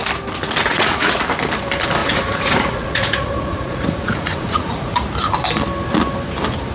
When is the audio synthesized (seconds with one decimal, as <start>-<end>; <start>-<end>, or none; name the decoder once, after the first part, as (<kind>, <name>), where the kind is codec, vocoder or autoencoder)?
0.6-1.2 (vocoder, Vocos); 2.0-4.9